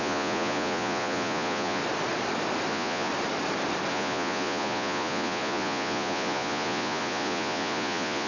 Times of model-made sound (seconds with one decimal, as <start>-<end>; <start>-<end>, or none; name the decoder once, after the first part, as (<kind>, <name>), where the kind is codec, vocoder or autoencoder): 0.0-1.8 (vocoder, Vocos); 2.7-3.1; 3.9-8.3